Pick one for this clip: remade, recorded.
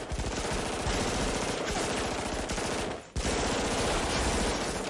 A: recorded